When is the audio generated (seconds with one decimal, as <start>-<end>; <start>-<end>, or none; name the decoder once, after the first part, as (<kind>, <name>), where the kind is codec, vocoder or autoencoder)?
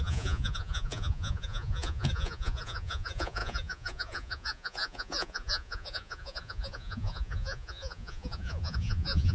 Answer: 0.0-9.3 (vocoder, Vocos)